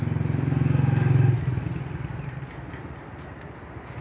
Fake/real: real